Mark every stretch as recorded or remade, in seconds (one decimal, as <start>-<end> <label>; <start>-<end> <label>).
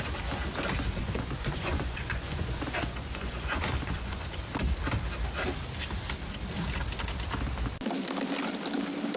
0.0-1.0 recorded; 1.0-4.4 remade; 4.4-9.2 recorded